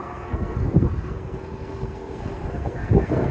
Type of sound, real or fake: fake